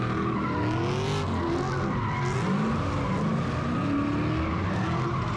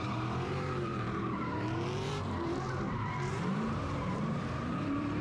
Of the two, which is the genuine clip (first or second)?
first